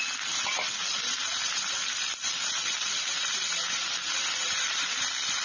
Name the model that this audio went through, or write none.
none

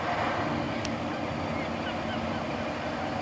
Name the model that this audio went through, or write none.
none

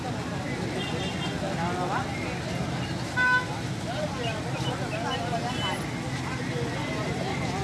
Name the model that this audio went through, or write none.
none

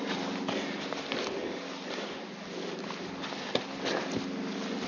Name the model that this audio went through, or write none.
none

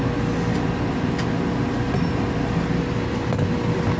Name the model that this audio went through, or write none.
none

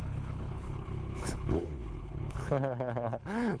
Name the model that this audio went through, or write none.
codec, HILCodec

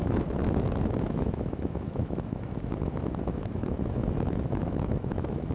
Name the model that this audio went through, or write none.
autoencoder, DAC-VAE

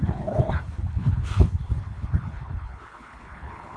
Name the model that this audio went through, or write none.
codec, HILCodec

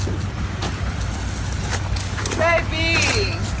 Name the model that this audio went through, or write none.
none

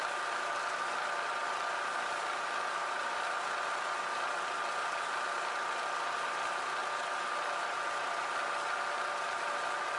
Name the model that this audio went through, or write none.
none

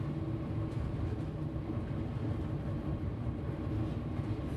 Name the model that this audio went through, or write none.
none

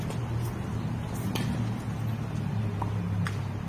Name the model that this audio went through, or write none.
none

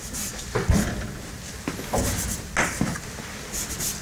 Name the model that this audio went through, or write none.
none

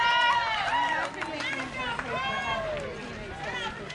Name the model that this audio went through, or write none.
none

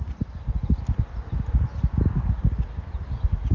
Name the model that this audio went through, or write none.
none